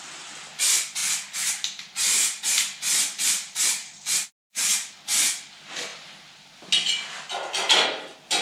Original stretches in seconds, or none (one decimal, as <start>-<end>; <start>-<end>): 0.0-8.4